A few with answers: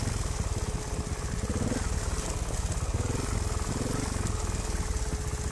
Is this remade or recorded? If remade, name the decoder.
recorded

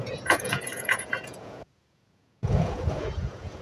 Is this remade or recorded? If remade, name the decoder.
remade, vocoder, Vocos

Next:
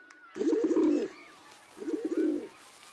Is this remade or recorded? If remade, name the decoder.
recorded